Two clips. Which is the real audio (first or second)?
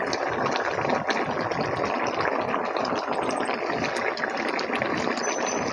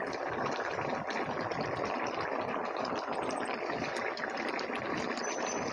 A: first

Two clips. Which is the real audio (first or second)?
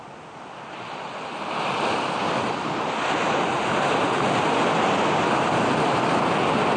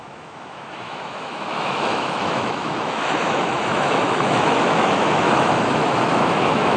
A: first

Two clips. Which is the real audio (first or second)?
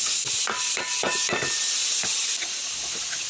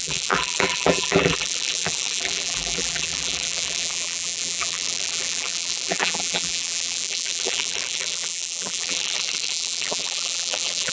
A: first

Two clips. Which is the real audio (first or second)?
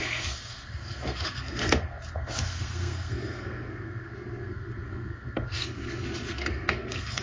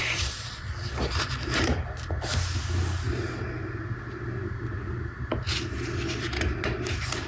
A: second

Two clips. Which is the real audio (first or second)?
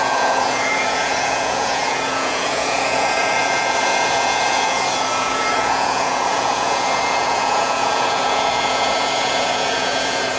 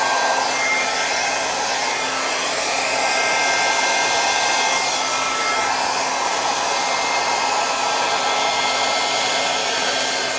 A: second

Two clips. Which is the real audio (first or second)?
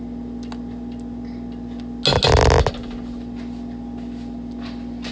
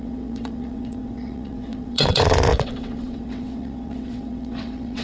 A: first